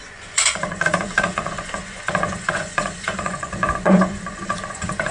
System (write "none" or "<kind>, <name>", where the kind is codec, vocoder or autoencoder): vocoder, Vocos